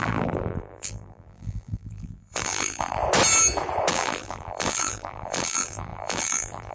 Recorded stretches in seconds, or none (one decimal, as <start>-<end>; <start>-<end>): 3.0-3.9